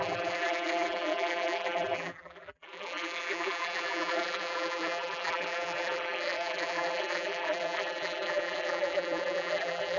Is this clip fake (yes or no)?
yes